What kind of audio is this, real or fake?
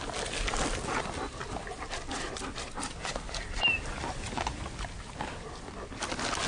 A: real